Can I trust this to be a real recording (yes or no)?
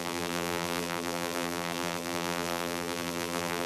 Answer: no